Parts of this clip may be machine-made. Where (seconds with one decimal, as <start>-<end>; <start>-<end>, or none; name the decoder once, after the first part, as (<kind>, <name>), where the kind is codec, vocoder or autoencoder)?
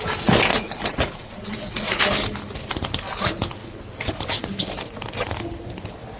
0.5-2.0 (vocoder, Vocos)